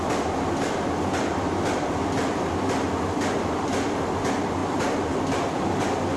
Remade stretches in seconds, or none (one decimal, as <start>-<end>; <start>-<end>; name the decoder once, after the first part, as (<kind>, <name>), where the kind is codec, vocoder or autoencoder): none